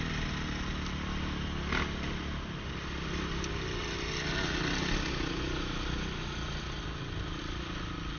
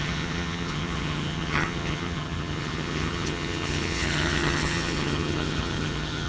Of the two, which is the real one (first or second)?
first